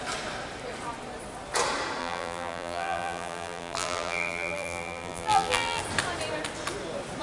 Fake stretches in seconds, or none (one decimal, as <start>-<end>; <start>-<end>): 2.0-5.8